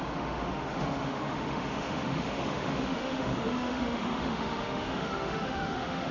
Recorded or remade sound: remade